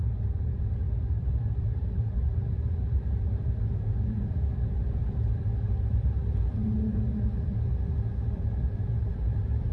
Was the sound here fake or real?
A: fake